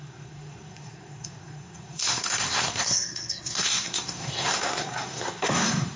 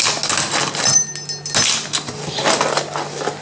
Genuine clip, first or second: second